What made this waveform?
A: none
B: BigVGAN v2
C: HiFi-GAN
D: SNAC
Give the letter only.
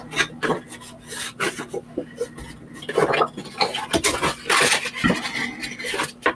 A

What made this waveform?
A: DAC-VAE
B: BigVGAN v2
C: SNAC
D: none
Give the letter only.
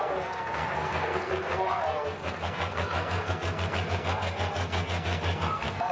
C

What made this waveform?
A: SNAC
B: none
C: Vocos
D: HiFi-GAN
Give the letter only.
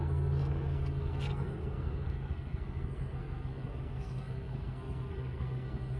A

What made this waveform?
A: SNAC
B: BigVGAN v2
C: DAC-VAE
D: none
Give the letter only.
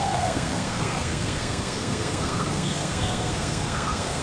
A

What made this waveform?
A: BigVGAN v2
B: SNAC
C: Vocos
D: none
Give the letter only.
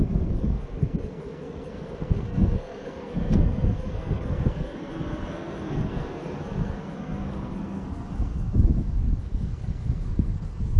B